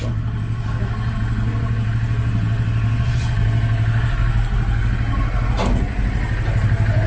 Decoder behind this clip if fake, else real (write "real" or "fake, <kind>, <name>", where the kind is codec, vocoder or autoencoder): real